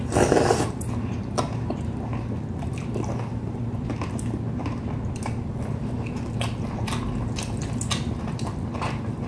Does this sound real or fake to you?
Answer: real